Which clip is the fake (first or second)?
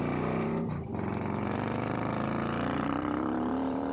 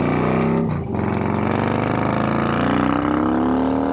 first